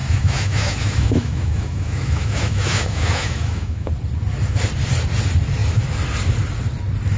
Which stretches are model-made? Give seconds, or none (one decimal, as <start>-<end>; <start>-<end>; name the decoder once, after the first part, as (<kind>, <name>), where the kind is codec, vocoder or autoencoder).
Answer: 0.0-3.9 (autoencoder, DAC-VAE)